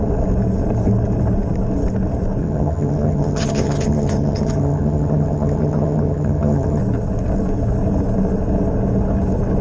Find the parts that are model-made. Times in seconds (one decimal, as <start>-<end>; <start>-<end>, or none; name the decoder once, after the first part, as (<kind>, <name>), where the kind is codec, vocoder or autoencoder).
2.4-6.8 (vocoder, HiFi-GAN)